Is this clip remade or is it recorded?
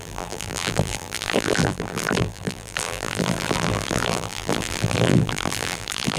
remade